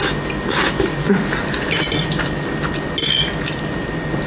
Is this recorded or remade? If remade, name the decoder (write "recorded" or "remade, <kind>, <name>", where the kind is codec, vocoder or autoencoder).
recorded